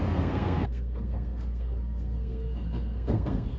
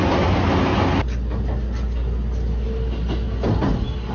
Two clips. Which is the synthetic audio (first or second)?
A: first